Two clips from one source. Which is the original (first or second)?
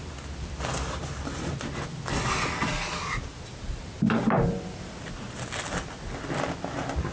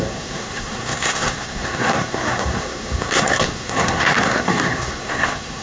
first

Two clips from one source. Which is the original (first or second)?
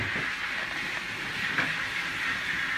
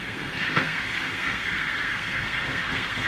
first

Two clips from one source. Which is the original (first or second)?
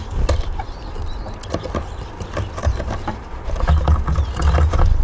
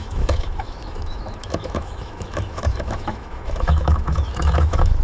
first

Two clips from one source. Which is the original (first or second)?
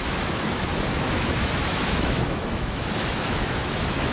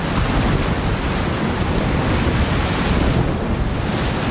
second